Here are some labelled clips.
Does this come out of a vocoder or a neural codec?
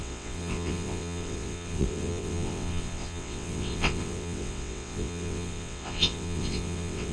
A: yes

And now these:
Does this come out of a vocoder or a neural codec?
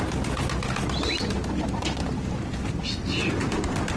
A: no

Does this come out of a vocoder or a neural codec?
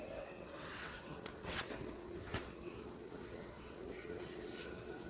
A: yes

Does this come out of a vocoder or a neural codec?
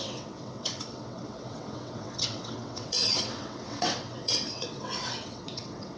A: yes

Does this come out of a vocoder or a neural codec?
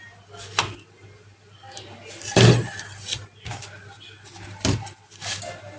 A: no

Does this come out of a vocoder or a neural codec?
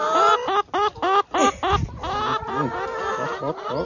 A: no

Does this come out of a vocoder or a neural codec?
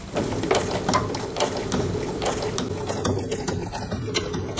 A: no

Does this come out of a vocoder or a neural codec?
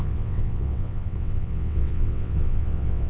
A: yes